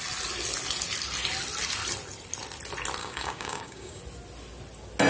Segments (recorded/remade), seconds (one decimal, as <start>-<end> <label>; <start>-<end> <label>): 0.0-3.0 recorded; 3.0-4.0 remade; 4.0-5.1 recorded